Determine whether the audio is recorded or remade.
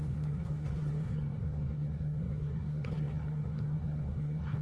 remade